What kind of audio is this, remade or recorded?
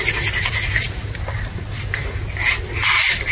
recorded